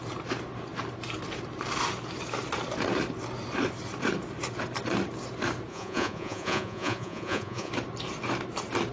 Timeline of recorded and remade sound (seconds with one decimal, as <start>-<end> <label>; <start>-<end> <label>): 0.0-5.7 recorded; 5.7-7.7 remade; 7.7-8.9 recorded